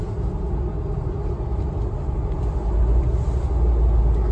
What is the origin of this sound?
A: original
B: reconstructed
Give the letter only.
A